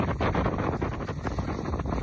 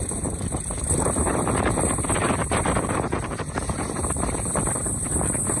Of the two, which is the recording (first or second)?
first